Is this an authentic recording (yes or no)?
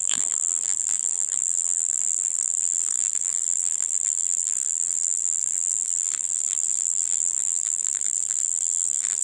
no